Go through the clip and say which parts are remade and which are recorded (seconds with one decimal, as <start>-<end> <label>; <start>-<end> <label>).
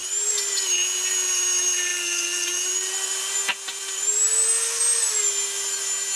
0.0-6.2 recorded